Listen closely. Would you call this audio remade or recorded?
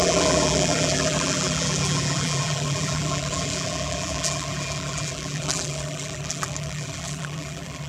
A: remade